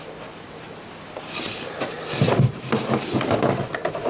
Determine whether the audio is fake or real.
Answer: real